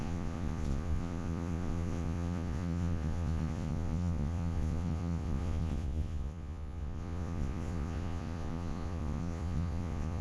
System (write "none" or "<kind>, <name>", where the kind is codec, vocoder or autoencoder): vocoder, Vocos